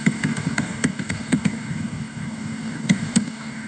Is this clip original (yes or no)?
no